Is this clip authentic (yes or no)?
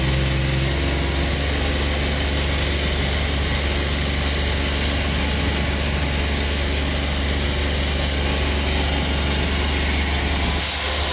yes